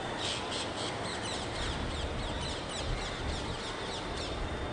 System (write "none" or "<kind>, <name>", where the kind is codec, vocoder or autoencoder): none